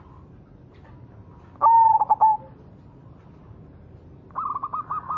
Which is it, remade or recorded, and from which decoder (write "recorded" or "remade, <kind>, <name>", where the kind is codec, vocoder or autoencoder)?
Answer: recorded